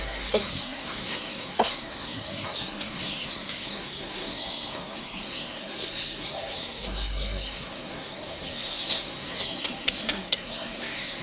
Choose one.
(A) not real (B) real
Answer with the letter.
A